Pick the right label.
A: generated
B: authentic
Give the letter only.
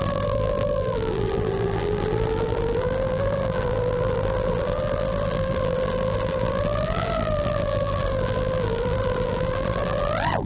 A